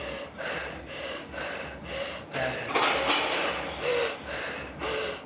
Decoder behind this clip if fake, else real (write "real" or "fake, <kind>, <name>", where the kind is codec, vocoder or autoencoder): real